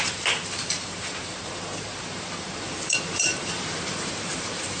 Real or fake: fake